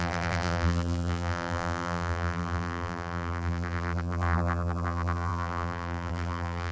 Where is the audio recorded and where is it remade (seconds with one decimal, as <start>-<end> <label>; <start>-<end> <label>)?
0.0-6.7 remade